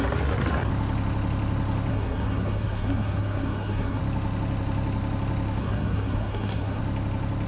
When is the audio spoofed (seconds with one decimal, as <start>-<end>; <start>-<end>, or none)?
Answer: 0.0-0.7; 1.9-4.0; 5.6-6.8